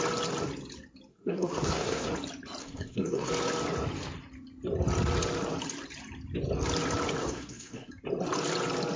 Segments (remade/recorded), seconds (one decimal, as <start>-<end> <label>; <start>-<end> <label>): 0.0-1.1 recorded; 1.1-2.1 remade; 2.1-2.6 recorded; 2.6-3.3 remade; 3.3-7.2 recorded; 7.2-7.9 remade; 7.9-9.0 recorded